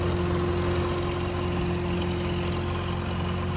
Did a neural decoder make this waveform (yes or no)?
no